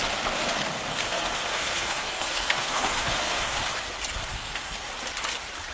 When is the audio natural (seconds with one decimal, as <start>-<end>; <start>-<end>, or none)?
0.0-0.9; 3.6-4.3; 4.9-5.7

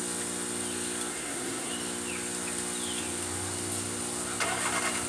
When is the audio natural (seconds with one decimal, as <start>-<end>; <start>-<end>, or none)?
0.0-1.1; 1.7-5.1

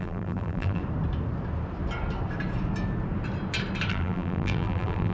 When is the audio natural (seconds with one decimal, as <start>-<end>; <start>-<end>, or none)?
0.8-3.9

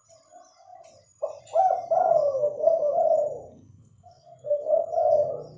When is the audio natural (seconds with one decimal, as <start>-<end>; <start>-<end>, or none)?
0.0-2.0; 3.0-3.4; 4.9-5.6

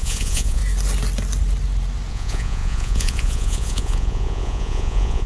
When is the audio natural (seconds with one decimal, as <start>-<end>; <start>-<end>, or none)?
0.6-2.1